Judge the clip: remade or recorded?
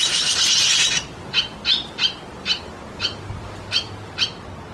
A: recorded